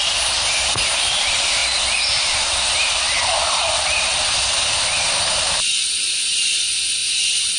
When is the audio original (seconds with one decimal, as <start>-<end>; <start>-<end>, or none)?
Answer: 0.0-7.6